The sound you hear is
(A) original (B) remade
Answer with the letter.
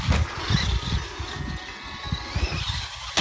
A